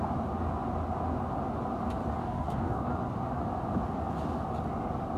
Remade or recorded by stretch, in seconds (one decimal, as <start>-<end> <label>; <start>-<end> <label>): 0.0-2.2 recorded; 2.2-2.9 remade; 2.9-5.2 recorded